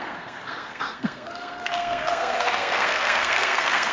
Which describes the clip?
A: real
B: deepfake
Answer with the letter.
B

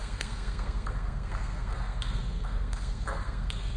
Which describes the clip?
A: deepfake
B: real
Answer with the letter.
A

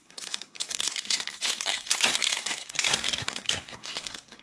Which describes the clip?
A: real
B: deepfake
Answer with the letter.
B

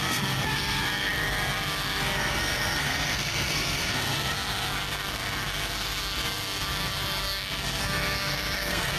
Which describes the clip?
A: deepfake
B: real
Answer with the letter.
A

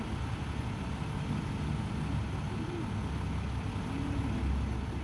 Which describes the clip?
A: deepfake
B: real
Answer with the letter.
B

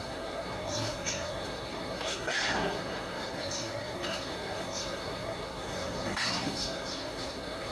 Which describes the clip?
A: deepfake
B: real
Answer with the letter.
A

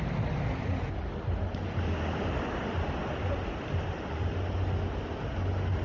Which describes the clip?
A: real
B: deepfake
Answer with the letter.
A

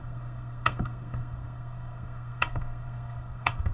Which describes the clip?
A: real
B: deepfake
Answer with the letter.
B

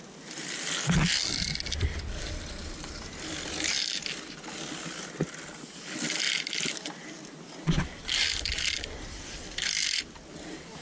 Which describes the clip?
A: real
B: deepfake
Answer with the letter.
A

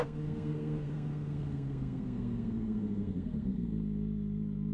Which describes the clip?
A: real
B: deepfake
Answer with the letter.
B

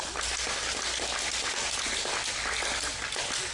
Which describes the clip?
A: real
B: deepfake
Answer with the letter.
A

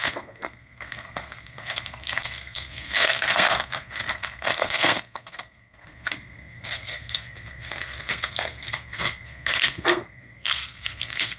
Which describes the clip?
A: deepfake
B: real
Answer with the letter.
A